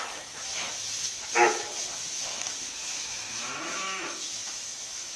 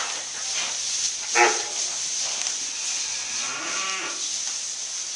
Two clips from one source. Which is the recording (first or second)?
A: second